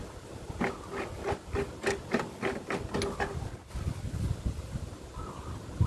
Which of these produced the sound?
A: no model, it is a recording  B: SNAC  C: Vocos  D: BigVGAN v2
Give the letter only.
A